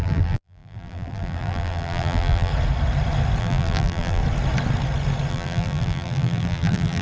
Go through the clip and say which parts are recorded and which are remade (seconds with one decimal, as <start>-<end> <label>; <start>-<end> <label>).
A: 0.0-2.5 remade; 2.5-3.4 recorded; 3.4-4.2 remade; 4.2-5.3 recorded; 5.3-7.0 remade